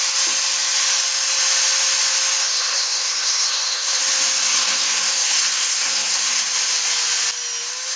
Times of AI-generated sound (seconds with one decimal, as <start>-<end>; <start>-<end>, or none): 2.4-4.0; 4.5-6.4